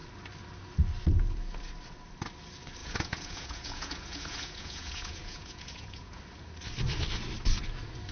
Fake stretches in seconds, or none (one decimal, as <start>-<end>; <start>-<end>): 2.8-6.2